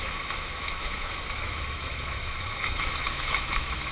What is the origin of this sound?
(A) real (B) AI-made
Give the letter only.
B